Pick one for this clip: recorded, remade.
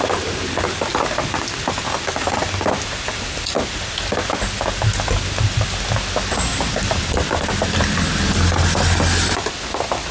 recorded